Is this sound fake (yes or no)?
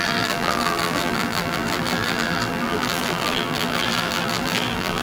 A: yes